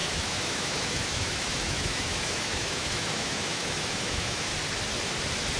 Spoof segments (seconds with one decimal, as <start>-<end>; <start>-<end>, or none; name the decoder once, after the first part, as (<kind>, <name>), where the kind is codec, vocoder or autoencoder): 0.0-4.5 (autoencoder, DAC-VAE)